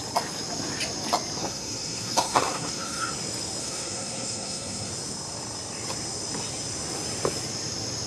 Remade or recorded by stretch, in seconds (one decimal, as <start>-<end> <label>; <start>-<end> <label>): 0.0-1.4 recorded; 1.4-3.1 remade; 3.1-3.6 recorded; 3.6-4.9 remade; 4.9-8.1 recorded